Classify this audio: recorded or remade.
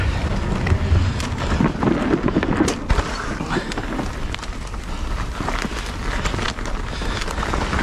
recorded